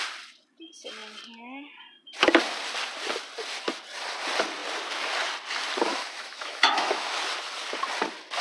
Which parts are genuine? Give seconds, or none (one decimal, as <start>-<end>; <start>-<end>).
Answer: 0.0-5.9; 7.2-8.4